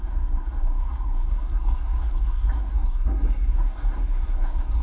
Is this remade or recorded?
remade